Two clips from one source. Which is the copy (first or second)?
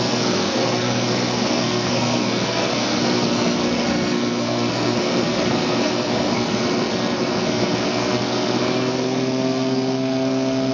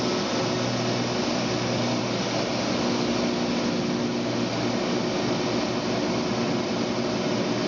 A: first